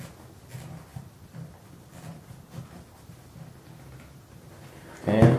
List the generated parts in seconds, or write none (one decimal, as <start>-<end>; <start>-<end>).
0.9-2.9